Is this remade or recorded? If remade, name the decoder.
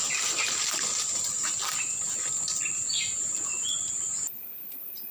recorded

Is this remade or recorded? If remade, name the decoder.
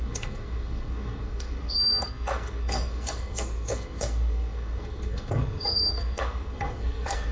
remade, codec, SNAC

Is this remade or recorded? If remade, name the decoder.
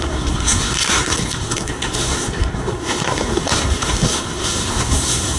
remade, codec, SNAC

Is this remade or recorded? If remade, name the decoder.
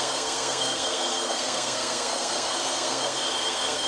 remade, codec, SNAC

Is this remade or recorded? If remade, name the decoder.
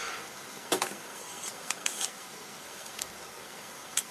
remade, codec, SNAC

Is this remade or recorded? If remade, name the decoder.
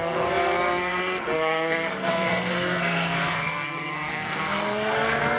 remade, codec, SNAC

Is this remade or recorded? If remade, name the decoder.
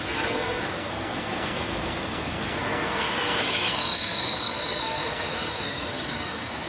remade, codec, SNAC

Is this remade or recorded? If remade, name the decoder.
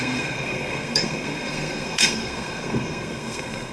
remade, codec, SNAC